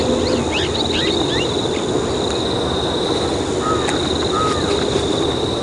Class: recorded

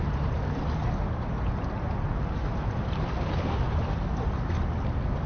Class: recorded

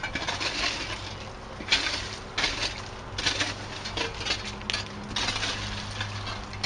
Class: recorded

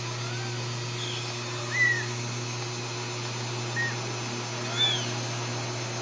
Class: recorded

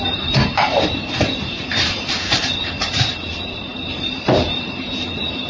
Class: remade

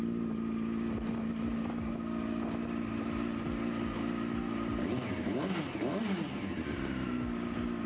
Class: recorded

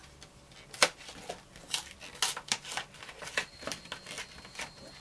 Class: recorded